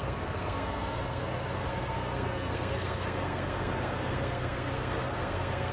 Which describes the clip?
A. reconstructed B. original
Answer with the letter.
A